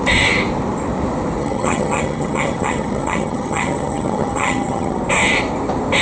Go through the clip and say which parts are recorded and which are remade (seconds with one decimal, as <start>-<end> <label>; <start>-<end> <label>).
0.0-1.4 recorded; 1.4-5.0 remade; 5.0-6.0 recorded